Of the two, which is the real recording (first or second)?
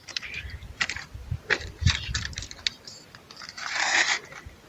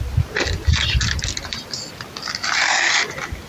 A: second